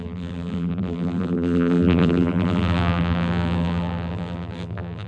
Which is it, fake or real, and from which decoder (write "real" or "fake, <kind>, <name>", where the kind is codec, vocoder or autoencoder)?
fake, vocoder, BigVGAN v2